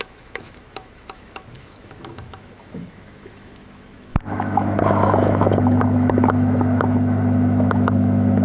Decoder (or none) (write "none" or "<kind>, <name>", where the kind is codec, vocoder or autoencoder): autoencoder, DAC-VAE